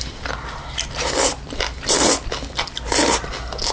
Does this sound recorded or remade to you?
recorded